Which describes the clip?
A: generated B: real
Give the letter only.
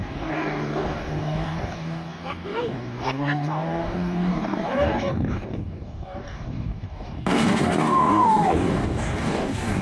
A